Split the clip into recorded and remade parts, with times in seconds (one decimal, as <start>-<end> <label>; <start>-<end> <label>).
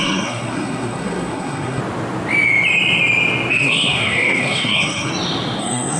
0.0-1.8 remade; 1.8-3.5 recorded; 3.5-5.1 remade; 5.1-5.6 recorded; 5.6-6.0 remade